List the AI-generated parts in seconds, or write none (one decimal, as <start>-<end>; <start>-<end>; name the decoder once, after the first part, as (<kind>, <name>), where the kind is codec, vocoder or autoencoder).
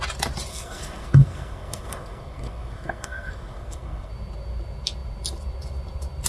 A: 0.5-4.1 (codec, SNAC)